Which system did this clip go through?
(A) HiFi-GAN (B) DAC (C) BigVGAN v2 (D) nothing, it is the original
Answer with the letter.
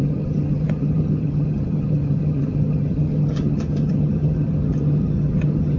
A